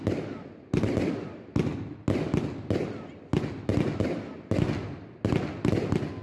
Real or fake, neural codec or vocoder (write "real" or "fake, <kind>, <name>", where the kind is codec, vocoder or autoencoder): real